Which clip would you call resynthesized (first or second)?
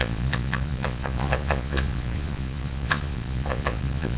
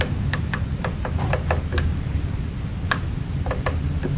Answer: first